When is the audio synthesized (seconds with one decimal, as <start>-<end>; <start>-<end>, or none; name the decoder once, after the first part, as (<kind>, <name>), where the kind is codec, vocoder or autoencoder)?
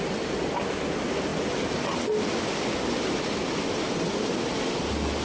none